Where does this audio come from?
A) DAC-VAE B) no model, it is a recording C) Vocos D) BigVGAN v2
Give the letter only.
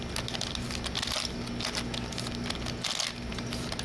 B